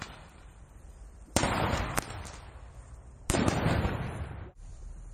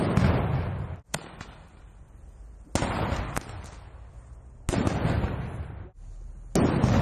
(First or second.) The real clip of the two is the second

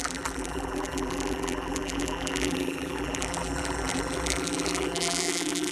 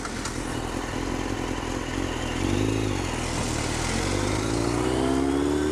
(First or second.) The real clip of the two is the second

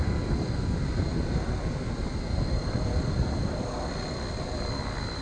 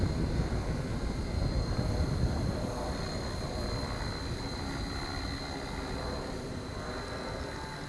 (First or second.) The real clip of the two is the second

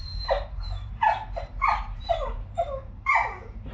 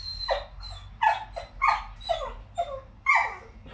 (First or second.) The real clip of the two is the second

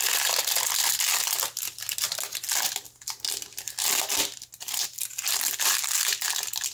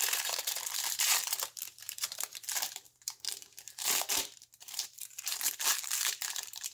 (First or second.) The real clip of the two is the first